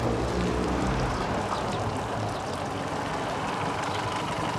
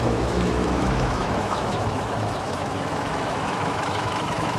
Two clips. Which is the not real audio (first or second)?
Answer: second